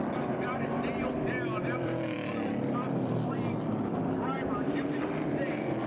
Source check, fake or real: fake